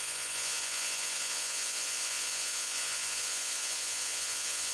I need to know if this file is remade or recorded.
remade